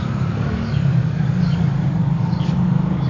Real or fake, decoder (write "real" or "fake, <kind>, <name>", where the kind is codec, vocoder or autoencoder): fake, codec, DAC